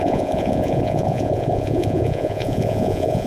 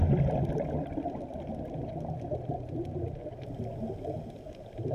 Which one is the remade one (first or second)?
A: first